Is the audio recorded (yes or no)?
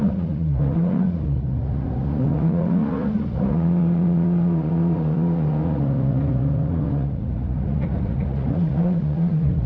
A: no